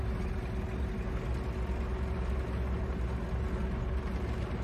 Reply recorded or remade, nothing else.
recorded